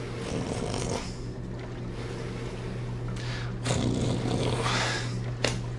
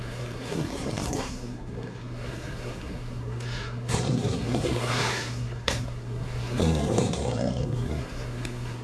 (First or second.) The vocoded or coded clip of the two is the second